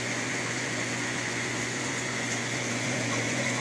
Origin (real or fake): fake